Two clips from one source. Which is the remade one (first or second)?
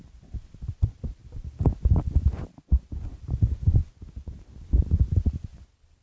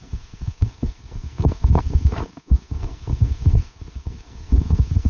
second